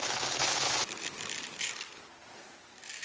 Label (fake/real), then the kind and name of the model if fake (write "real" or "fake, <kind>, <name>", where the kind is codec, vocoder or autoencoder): real